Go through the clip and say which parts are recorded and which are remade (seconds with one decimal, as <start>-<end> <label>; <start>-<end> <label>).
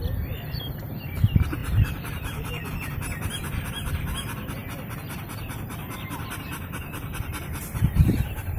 0.0-1.6 recorded; 1.6-2.7 remade; 2.7-8.6 recorded